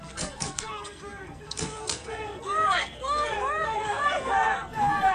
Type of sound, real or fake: fake